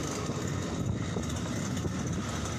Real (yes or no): yes